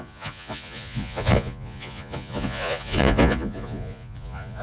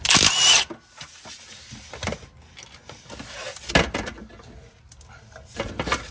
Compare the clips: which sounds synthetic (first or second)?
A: first